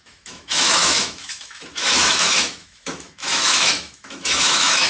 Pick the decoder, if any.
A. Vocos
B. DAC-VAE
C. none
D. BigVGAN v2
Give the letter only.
B